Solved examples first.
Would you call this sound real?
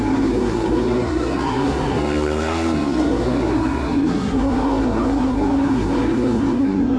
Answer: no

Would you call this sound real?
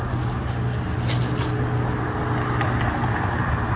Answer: yes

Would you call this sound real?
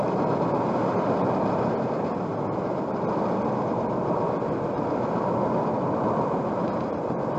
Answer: yes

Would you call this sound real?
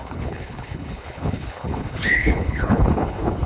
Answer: no